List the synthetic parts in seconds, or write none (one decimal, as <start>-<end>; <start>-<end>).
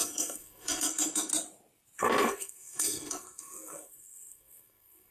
0.0-1.3; 2.0-5.1